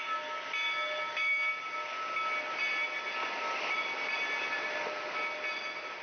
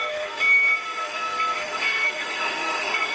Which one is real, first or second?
first